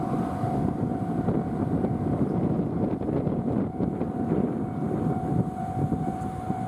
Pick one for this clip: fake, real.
fake